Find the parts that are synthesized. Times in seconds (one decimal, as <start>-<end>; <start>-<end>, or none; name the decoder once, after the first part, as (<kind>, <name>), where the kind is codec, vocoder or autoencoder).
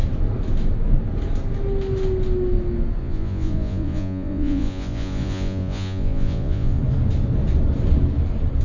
3.0-6.8 (vocoder, Vocos)